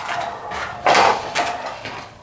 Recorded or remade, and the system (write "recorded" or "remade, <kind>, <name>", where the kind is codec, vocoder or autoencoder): recorded